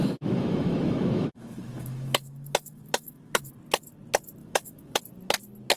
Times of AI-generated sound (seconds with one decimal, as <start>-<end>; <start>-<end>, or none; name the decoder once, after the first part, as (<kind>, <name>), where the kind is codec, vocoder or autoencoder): 0.0-3.5 (autoencoder, DAC-VAE); 4.4-5.0

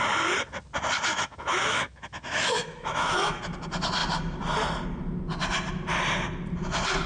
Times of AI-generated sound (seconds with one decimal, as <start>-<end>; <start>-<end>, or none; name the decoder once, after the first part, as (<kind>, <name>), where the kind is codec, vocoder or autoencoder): 1.1-3.4 (autoencoder, DAC-VAE)

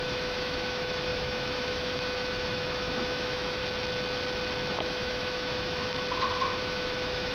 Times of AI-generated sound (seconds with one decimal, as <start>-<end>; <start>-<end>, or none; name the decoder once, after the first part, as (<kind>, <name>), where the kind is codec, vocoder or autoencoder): 0.0-3.6 (autoencoder, DAC-VAE); 4.7-5.8; 6.6-7.3

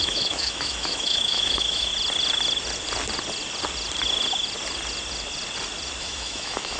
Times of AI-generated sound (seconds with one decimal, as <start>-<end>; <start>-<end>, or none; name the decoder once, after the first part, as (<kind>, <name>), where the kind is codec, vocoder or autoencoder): 0.0-1.9 (autoencoder, DAC-VAE); 6.0-6.8